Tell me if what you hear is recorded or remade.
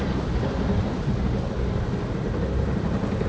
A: recorded